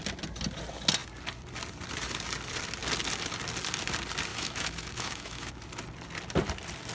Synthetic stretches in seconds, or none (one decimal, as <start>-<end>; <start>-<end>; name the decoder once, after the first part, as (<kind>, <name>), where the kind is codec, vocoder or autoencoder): 4.3-5.5 (autoencoder, DAC-VAE)